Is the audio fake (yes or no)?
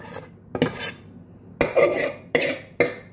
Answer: no